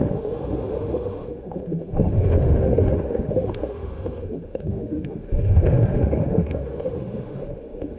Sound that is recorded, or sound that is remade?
remade